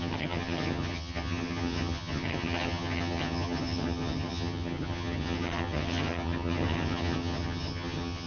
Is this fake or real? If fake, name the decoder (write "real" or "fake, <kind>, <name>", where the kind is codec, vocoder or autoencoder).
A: fake, vocoder, HiFi-GAN